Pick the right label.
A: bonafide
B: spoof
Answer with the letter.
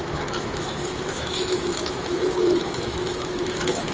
B